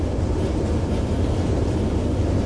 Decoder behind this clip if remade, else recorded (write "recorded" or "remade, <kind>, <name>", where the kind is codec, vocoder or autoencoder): recorded